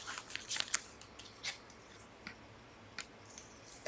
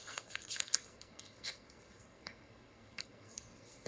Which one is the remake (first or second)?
second